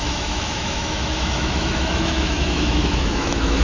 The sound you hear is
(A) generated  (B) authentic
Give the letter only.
A